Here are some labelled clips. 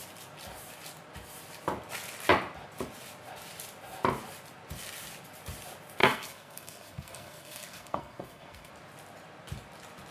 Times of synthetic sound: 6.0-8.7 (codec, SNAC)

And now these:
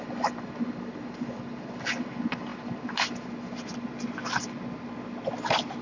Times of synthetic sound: none

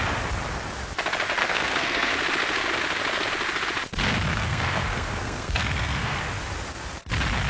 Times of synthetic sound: 1.4-2.1 (codec, SNAC); 4.3-6.2

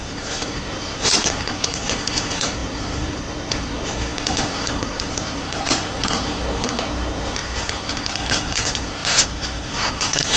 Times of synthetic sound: 0.0-10.4 (codec, SNAC)

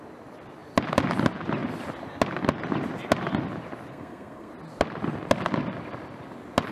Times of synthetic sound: 3.9-4.5 (codec, SNAC)

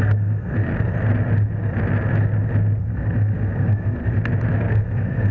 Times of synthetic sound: 0.0-0.7 (codec, SNAC); 2.8-4.0; 4.6-5.3